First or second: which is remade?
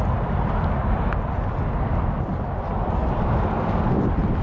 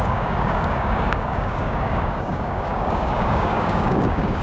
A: second